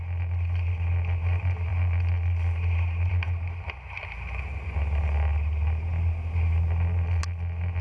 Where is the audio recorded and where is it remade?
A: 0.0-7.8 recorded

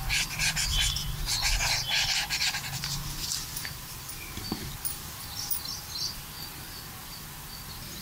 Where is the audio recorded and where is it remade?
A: 0.0-2.6 recorded; 2.6-4.1 remade; 4.1-4.9 recorded; 4.9-5.7 remade; 5.7-8.0 recorded